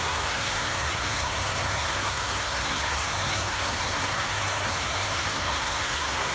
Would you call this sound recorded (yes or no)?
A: no